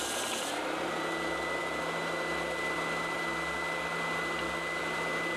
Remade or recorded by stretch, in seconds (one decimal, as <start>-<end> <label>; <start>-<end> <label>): 0.0-5.4 recorded